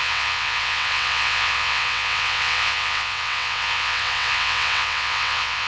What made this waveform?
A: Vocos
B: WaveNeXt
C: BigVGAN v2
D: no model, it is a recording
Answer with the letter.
B